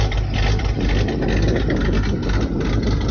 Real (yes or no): yes